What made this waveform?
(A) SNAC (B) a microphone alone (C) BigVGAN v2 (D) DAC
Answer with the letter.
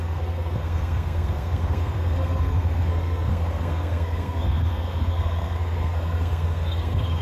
A